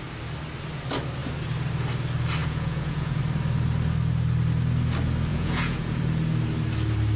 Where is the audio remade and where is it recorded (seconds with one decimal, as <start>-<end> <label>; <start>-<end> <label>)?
0.0-2.4 recorded; 2.4-3.2 remade; 3.2-5.3 recorded; 5.3-6.0 remade; 6.0-7.2 recorded